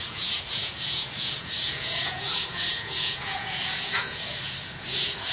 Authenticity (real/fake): fake